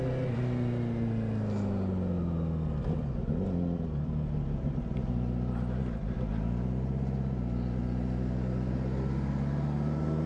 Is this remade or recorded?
recorded